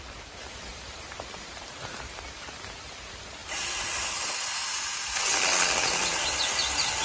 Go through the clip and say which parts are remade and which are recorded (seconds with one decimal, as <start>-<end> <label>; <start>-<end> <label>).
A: 0.0-7.0 recorded